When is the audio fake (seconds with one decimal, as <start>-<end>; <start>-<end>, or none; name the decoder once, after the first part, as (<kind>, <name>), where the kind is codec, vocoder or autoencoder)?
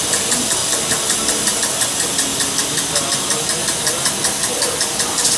none